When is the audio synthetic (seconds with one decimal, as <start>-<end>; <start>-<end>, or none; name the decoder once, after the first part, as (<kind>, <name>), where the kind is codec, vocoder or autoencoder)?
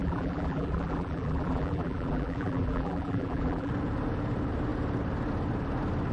0.0-3.7 (vocoder, BigVGAN v2)